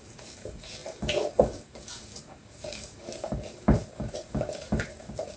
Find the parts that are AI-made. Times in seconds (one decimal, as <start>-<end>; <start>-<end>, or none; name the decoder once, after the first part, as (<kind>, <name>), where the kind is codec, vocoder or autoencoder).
0.0-5.4 (codec, DAC)